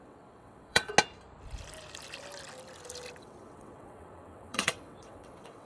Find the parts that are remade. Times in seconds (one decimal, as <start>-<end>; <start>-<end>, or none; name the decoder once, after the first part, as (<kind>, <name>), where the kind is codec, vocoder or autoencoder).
0.0-0.9 (vocoder, WaveNeXt); 3.2-5.7